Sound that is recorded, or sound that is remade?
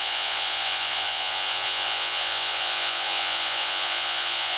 remade